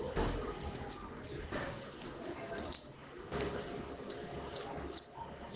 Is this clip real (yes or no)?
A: yes